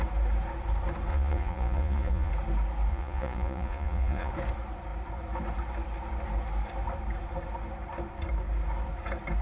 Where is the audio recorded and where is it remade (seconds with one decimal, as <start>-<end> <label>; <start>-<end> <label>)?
0.0-1.1 recorded; 1.1-2.3 remade; 2.3-2.9 recorded; 2.9-4.3 remade; 4.3-9.4 recorded